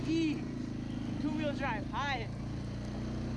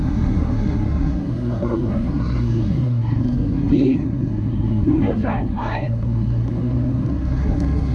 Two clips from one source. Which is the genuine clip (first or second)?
first